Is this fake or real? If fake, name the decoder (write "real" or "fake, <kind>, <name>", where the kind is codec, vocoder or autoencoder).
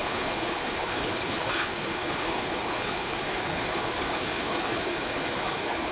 fake, codec, HILCodec